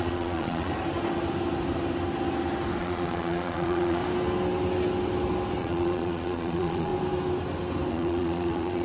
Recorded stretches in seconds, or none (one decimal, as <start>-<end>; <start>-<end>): 0.7-2.8; 4.0-5.6; 6.9-7.9